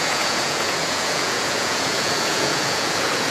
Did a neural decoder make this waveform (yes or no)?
yes